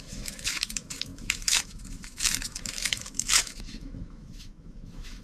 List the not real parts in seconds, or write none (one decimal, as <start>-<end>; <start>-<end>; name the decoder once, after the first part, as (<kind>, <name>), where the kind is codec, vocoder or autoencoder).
0.0-5.2 (autoencoder, DAC-VAE)